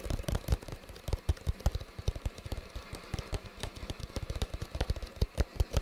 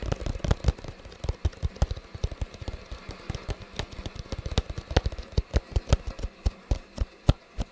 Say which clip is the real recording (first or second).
second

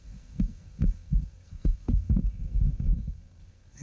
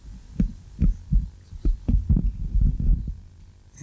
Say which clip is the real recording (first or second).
second